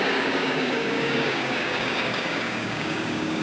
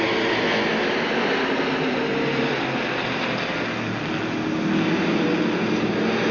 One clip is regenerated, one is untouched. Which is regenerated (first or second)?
first